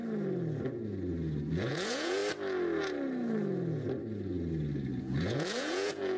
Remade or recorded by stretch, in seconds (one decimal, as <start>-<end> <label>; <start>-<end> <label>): 0.0-1.5 recorded; 1.5-2.2 remade; 2.2-5.0 recorded; 5.0-6.2 remade

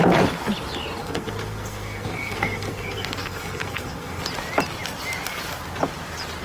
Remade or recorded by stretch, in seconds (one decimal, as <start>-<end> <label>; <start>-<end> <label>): 0.0-1.0 recorded; 1.0-4.2 remade; 4.2-6.4 recorded

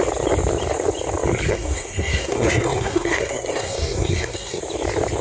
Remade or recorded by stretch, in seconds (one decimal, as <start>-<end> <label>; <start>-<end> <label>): 0.0-1.5 recorded; 1.5-4.6 remade; 4.6-5.2 recorded

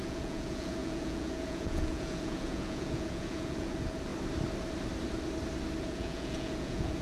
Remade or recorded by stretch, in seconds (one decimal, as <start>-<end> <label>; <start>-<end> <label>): 0.0-4.1 remade; 4.1-5.8 recorded; 5.8-7.0 remade